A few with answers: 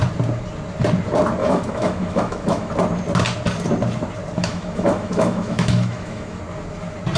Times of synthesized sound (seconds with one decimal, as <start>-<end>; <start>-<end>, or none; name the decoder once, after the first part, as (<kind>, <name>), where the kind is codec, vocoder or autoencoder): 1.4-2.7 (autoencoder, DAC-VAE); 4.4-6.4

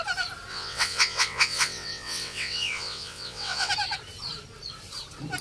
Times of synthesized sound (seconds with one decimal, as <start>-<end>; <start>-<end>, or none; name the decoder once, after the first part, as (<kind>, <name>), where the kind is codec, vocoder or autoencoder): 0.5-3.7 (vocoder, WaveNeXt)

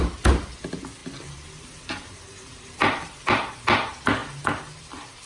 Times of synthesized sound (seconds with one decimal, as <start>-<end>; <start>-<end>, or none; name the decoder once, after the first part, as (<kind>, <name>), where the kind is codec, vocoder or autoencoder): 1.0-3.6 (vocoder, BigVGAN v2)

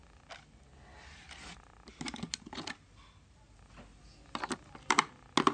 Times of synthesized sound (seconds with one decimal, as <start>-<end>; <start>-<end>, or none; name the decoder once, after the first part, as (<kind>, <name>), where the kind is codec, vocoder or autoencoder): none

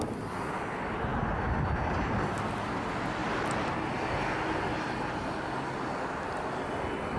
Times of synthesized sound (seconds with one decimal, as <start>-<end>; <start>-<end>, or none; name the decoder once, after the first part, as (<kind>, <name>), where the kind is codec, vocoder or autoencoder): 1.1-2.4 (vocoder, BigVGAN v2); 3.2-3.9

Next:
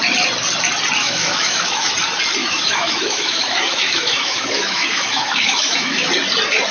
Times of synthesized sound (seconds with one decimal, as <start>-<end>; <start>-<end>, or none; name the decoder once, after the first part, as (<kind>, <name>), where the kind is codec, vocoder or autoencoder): 1.0-1.9 (autoencoder, DAC-VAE); 2.4-6.1